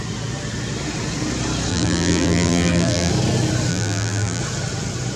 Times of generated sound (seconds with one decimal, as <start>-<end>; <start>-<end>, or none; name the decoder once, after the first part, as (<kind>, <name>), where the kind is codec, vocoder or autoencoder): 1.7-3.1 (vocoder, BigVGAN v2); 3.7-4.4